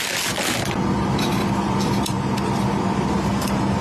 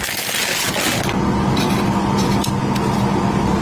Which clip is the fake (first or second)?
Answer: first